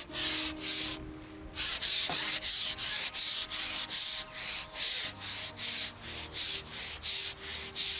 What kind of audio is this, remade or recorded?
recorded